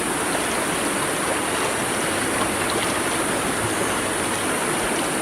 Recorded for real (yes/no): yes